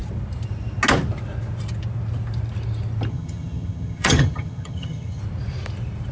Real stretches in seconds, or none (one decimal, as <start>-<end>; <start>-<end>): 0.0-3.1; 5.2-6.1